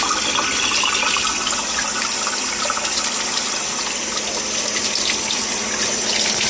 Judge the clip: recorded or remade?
recorded